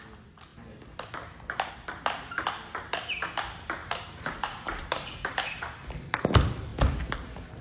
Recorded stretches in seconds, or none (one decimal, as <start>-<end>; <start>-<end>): 0.0-3.8; 5.9-7.6